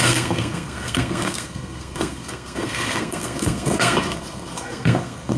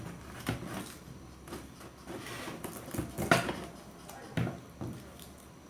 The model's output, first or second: first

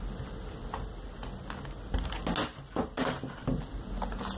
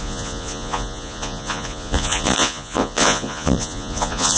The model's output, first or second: second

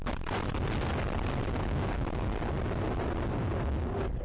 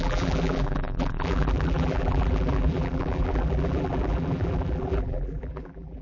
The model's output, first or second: second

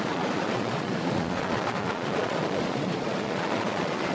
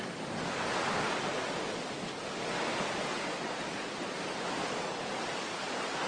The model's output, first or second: first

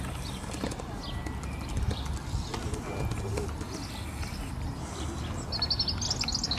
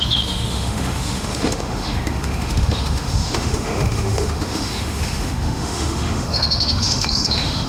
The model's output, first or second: second